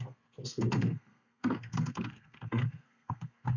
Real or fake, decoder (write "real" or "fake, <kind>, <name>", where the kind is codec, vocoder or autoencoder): fake, codec, SNAC